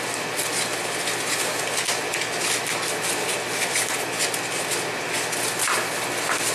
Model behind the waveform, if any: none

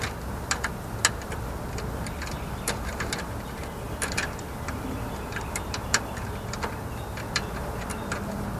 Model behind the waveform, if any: none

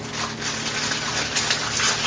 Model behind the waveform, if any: none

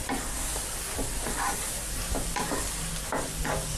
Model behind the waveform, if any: none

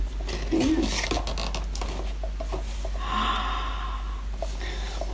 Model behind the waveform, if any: none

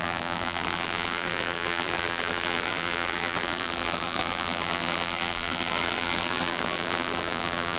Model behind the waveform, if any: vocoder, BigVGAN v2